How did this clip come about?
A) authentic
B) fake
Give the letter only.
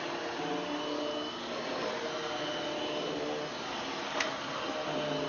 A